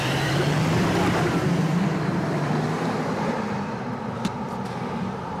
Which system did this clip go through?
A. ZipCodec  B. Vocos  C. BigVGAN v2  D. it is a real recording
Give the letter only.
C